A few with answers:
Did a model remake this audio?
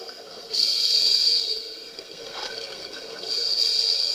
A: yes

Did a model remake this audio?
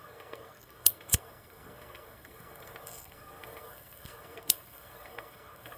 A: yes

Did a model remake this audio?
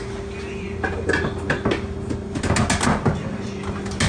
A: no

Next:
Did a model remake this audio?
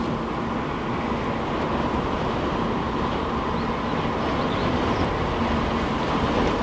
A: no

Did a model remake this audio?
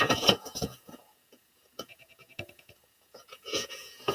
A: yes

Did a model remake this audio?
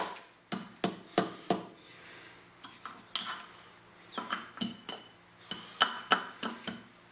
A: no